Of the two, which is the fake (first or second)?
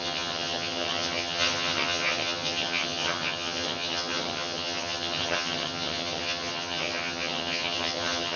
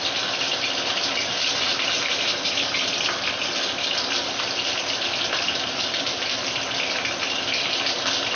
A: first